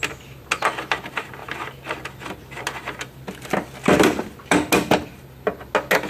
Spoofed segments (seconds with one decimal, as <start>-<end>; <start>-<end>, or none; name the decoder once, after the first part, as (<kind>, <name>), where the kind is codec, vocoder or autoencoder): none